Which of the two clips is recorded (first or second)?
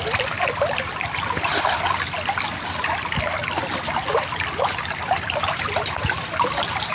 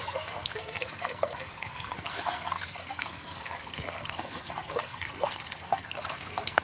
first